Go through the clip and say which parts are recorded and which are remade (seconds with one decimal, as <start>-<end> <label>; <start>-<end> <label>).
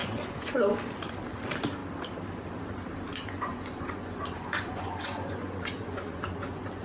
0.0-0.5 remade; 0.5-3.1 recorded; 3.1-6.8 remade